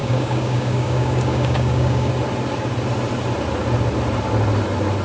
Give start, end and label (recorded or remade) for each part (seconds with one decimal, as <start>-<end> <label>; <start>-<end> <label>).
0.0-2.1 remade; 2.1-5.0 recorded